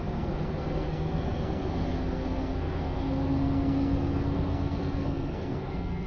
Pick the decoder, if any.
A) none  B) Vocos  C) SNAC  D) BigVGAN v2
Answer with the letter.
C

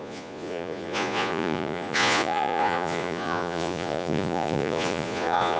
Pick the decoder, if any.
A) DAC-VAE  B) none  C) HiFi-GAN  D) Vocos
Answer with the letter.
D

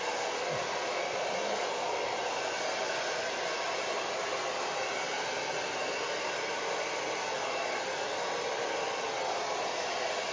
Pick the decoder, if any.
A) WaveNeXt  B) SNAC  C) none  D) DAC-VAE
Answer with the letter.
C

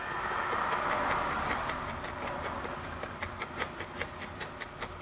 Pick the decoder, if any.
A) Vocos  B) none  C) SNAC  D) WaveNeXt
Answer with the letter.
B